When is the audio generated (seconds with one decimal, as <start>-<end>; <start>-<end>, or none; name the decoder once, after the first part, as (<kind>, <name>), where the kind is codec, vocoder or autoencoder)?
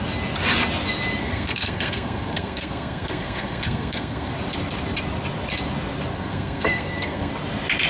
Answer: 1.2-4.3 (codec, SNAC); 6.1-7.3